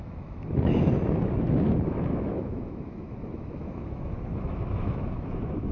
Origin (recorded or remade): remade